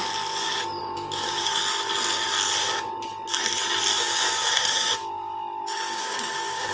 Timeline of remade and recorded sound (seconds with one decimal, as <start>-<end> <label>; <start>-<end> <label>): 0.0-0.8 recorded; 0.8-1.6 remade; 1.6-3.9 recorded; 3.9-6.7 remade